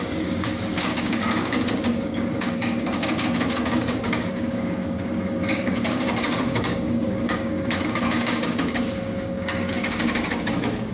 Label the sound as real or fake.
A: fake